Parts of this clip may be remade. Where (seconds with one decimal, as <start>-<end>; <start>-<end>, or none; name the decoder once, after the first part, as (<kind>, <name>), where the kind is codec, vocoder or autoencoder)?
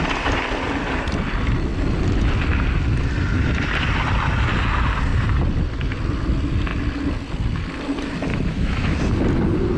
8.3-9.0 (autoencoder, DAC-VAE)